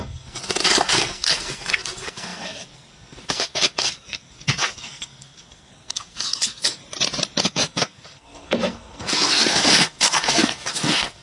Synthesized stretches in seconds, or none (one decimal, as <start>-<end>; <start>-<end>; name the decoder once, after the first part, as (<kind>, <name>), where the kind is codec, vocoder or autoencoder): 0.0-6.8 (codec, SNAC); 7.4-11.2